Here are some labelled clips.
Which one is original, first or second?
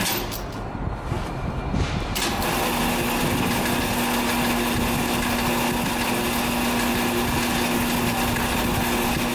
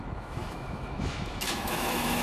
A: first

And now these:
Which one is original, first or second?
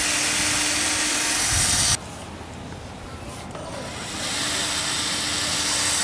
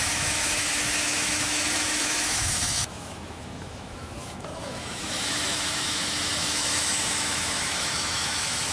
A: first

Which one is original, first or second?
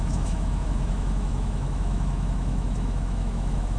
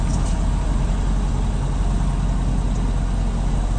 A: second